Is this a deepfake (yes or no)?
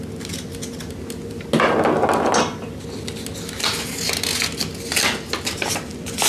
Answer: no